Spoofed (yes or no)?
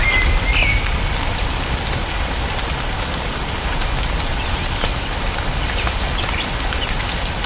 no